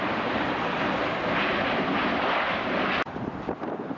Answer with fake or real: real